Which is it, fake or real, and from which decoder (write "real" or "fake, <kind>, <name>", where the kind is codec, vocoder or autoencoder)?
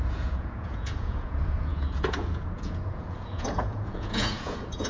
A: fake, vocoder, Vocos